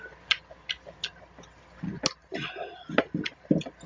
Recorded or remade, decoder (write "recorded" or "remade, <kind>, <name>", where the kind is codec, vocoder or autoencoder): recorded